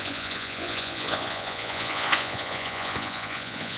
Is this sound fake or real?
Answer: fake